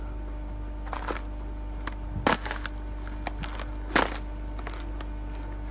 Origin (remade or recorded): recorded